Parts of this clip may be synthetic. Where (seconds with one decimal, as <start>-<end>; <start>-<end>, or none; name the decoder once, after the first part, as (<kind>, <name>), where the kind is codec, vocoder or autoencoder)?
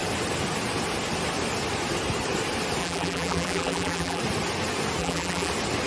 2.8-4.2 (vocoder, BigVGAN v2); 5.0-5.5